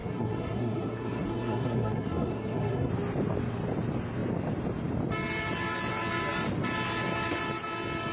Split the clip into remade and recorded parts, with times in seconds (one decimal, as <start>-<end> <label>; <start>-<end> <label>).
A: 0.0-2.9 remade; 2.9-8.1 recorded